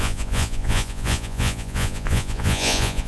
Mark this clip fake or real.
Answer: fake